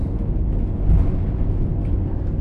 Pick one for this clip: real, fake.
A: real